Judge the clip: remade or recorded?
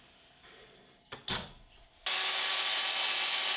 recorded